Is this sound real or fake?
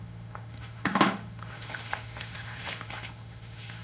fake